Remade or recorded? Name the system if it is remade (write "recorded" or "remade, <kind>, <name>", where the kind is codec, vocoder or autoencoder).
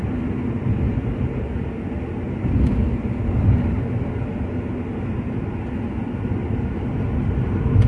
recorded